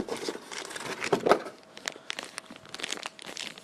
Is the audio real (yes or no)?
yes